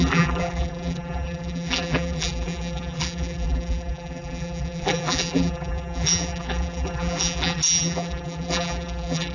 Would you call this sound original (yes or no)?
no